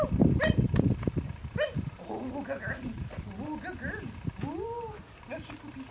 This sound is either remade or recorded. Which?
recorded